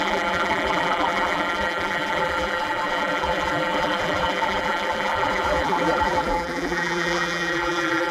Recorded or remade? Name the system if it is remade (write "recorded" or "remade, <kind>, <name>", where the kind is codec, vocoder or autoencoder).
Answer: remade, vocoder, BigVGAN v2